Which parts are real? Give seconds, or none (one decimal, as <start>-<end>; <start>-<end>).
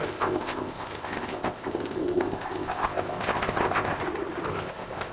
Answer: 3.9-4.5